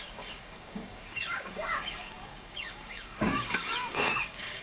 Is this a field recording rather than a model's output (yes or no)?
no